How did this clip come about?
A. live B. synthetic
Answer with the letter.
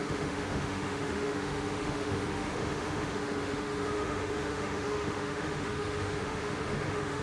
B